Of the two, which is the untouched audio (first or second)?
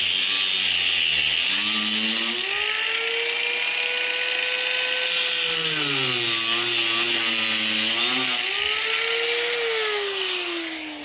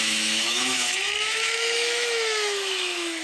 first